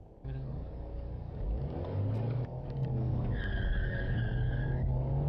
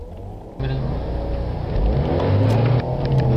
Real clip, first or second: second